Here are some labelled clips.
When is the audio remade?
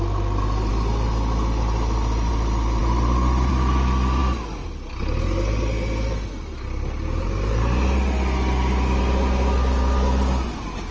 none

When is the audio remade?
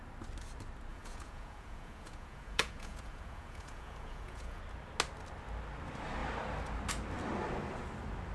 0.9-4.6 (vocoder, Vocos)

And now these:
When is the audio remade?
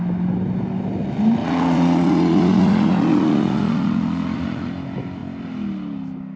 1.4-4.7 (vocoder, Vocos)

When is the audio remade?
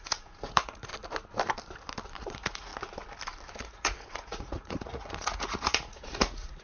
0.0-0.9 (vocoder, Vocos); 2.2-2.7; 3.6-6.6